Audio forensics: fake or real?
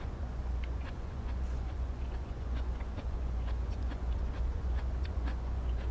fake